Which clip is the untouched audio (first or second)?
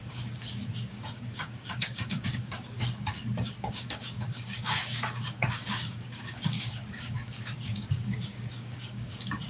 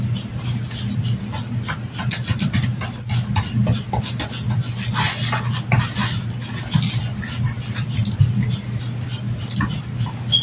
second